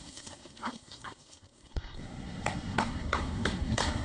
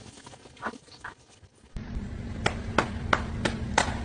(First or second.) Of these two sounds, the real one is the second